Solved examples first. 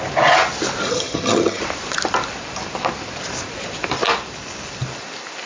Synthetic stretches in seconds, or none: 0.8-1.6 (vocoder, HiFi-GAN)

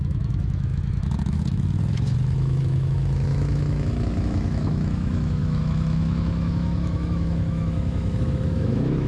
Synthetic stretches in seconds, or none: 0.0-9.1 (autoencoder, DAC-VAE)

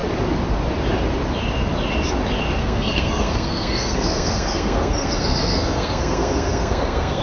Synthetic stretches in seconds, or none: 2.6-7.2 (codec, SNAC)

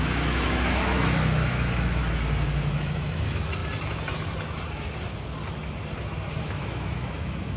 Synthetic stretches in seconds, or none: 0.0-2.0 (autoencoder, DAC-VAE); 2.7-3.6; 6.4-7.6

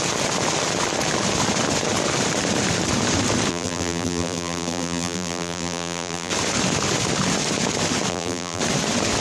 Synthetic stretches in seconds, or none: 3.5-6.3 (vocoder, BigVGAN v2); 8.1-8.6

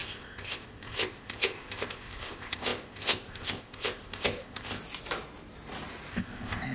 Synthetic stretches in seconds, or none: 0.0-4.8 (codec, ZipCodec); 6.1-6.7

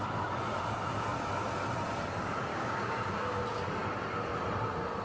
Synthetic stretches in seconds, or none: 2.5-3.4 (codec, DAC)